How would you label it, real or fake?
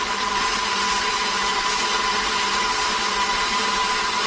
fake